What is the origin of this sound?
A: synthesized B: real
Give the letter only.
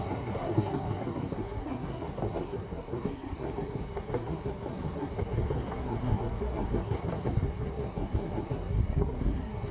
A